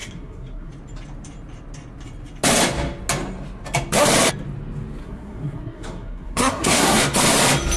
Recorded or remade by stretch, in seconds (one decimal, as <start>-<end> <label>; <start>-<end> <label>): 0.0-0.7 remade; 0.7-5.0 recorded; 5.0-7.0 remade; 7.0-7.8 recorded